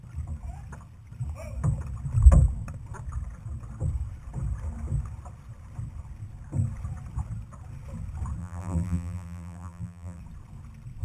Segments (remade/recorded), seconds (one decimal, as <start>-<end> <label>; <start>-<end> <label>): 0.0-8.4 recorded; 8.4-10.2 remade; 10.2-11.0 recorded